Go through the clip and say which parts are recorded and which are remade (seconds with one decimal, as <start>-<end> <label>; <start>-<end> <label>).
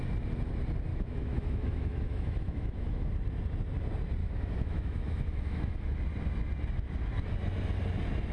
0.0-0.9 recorded; 0.9-3.1 remade; 3.1-4.2 recorded; 4.2-5.9 remade; 5.9-8.3 recorded